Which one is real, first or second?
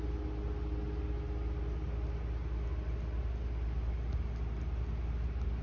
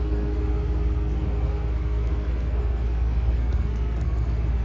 first